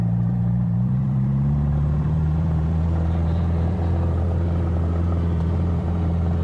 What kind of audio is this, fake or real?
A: fake